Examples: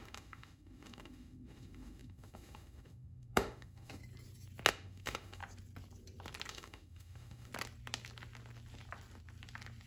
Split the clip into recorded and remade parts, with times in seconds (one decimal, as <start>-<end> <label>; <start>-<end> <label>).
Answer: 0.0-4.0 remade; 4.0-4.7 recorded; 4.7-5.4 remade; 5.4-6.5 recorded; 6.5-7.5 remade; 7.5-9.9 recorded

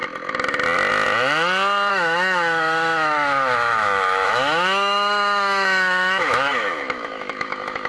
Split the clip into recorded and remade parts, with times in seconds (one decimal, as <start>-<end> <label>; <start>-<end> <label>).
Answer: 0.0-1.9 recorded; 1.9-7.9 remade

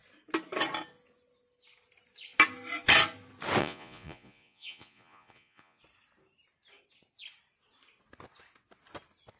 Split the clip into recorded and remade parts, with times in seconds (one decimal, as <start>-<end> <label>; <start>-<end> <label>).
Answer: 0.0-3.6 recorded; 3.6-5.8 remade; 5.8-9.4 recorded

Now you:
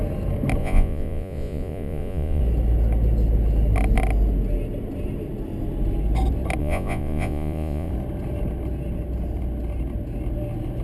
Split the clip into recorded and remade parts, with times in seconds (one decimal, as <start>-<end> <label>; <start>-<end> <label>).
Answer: 0.0-0.6 recorded; 0.6-2.4 remade; 2.4-6.6 recorded; 6.6-7.9 remade; 7.9-10.8 recorded